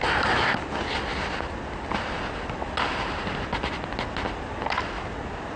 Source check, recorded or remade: recorded